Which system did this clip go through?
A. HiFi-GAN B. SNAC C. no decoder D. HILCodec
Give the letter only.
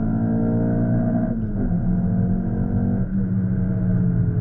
C